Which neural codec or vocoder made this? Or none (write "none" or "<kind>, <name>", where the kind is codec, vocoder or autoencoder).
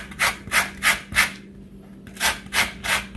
none